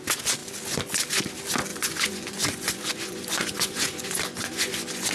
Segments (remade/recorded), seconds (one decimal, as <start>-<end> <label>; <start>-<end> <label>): 0.0-1.7 recorded; 1.7-5.1 remade